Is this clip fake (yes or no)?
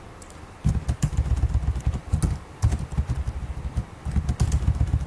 no